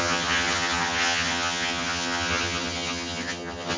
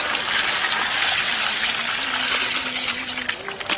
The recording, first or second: second